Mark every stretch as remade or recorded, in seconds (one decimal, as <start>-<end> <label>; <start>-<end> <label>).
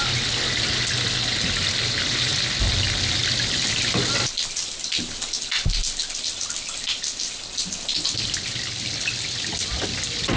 0.0-10.4 recorded